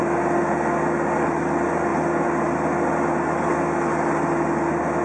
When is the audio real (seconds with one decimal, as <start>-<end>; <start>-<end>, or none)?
0.0-5.0